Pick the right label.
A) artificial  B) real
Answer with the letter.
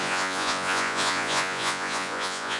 A